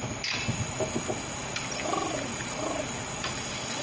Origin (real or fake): real